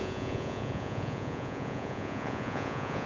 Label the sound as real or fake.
fake